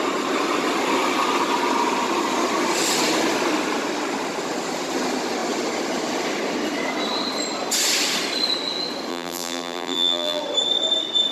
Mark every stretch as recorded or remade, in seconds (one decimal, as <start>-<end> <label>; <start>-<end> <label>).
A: 0.0-9.1 recorded; 9.1-10.4 remade; 10.4-11.3 recorded